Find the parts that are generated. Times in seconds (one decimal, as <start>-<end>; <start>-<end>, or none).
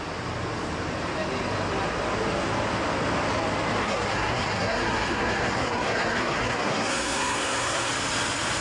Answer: 3.8-7.9